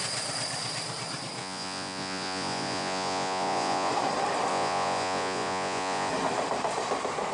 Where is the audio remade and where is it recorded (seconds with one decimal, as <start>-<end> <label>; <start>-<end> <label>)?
0.0-1.4 recorded; 1.4-3.9 remade; 3.9-4.5 recorded; 4.5-6.1 remade; 6.1-7.3 recorded